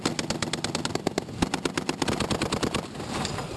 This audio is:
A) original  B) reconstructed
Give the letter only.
A